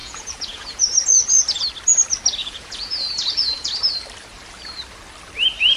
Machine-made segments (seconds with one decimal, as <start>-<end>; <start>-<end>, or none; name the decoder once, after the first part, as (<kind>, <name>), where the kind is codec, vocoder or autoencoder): 0.0-0.8 (vocoder, Vocos); 2.4-3.7